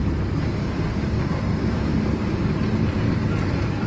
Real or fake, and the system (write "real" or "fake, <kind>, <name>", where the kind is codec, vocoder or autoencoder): fake, vocoder, BigVGAN v2